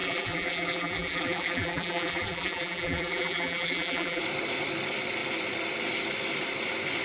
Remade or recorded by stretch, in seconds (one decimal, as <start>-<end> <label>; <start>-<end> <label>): 0.0-4.2 remade; 4.2-7.0 recorded